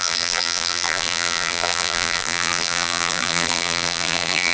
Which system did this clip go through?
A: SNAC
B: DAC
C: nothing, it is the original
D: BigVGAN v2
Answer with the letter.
D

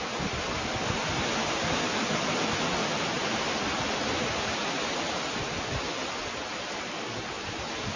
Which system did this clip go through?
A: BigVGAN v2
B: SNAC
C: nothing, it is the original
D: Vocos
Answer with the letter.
A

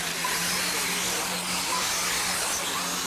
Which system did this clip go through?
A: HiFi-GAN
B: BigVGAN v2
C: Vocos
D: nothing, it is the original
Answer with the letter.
D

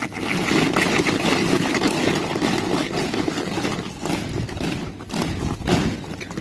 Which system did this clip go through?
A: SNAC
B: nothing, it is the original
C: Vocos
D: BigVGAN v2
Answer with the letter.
B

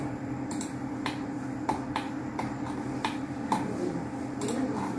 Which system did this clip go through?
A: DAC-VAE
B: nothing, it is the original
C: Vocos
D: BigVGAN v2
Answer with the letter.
D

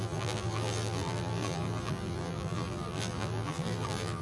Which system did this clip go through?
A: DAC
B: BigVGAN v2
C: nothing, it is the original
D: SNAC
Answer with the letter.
B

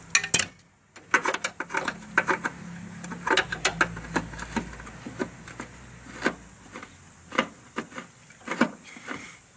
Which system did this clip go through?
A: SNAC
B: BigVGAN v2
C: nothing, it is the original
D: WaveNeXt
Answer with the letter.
C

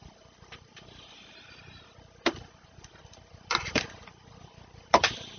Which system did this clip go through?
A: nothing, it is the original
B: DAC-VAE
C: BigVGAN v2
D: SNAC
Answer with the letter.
C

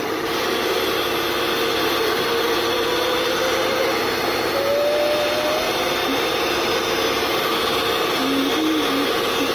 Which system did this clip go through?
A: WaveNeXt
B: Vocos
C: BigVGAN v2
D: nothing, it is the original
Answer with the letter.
D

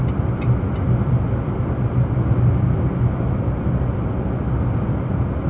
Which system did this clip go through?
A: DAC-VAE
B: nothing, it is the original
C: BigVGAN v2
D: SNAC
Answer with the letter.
B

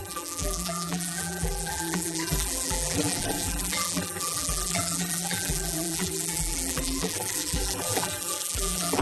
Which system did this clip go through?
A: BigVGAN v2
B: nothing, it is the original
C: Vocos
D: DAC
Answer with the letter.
A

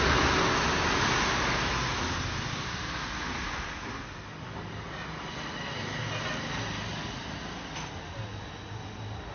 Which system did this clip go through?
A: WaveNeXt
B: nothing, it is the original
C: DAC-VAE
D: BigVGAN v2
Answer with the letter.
B